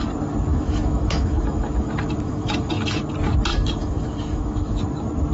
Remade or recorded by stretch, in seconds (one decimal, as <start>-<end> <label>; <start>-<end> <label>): 0.0-0.5 recorded; 0.5-3.0 remade; 3.0-3.5 recorded; 3.5-4.8 remade; 4.8-5.3 recorded